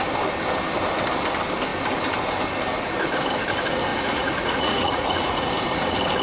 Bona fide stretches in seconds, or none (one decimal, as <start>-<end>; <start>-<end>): 0.0-3.9; 5.5-6.2